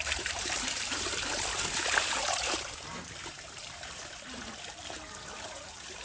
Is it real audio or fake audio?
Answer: fake